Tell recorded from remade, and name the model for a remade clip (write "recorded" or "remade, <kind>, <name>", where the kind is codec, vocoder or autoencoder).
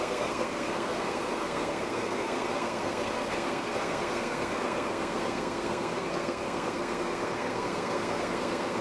remade, codec, SNAC